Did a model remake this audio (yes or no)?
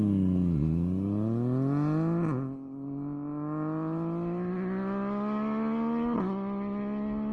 no